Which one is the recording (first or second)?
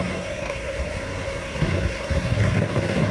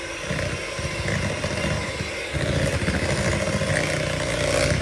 second